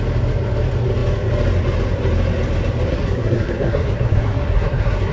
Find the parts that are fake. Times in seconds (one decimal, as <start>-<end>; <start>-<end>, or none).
2.9-5.1